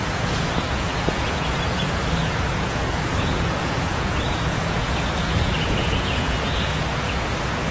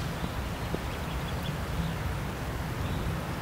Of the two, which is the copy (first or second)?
first